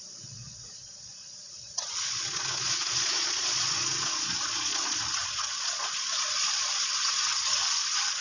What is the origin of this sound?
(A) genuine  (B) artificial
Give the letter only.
B